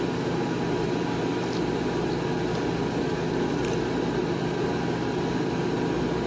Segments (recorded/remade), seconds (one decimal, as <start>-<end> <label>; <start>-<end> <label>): 0.0-6.3 recorded